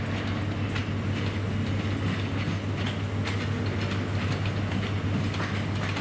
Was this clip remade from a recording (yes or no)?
no